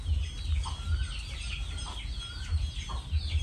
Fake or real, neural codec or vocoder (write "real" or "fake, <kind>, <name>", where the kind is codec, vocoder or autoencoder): real